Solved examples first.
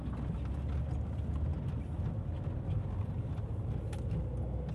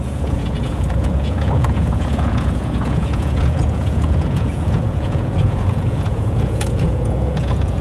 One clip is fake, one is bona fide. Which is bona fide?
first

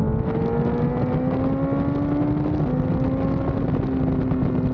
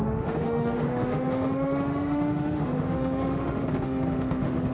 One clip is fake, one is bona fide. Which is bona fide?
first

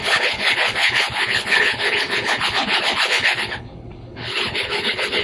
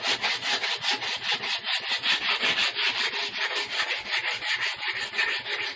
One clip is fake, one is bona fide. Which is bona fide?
second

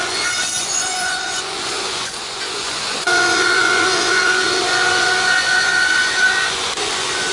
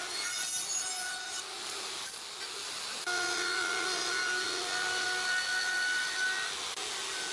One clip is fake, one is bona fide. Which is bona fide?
second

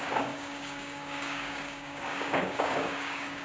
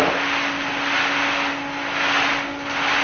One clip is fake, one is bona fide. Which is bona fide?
second